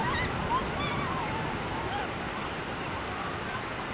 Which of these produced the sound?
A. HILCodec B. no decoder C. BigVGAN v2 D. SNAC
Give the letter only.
B